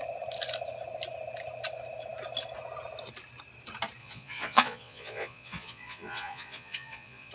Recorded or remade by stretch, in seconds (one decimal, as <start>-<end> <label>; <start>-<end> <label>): 0.0-4.0 recorded; 4.0-7.3 remade